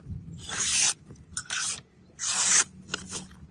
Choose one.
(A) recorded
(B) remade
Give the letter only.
A